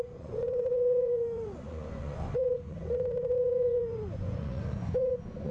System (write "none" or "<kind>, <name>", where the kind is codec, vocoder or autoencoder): vocoder, Vocos